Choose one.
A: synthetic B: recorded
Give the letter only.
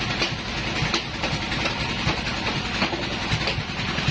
B